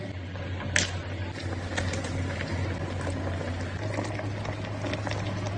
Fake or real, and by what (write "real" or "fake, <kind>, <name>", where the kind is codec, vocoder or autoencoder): real